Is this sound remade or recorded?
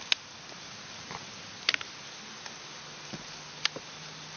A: recorded